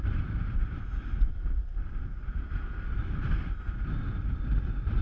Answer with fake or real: real